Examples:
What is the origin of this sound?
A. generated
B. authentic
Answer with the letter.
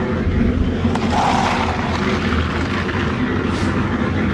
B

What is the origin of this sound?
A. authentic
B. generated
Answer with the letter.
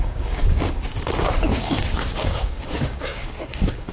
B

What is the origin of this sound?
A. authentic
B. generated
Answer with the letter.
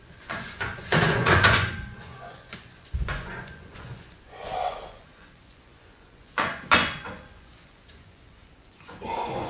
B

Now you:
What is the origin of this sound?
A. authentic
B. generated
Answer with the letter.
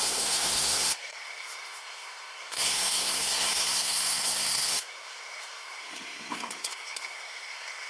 B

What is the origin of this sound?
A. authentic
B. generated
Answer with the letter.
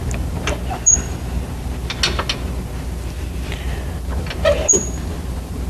A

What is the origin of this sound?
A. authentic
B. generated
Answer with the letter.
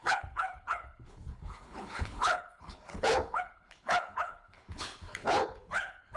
B